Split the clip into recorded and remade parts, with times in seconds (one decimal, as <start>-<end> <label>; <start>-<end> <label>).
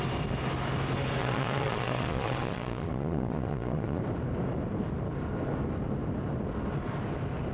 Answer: 0.0-1.2 recorded; 1.2-4.0 remade; 4.0-7.5 recorded